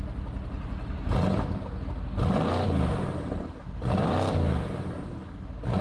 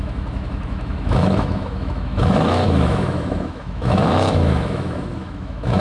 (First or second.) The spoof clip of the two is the second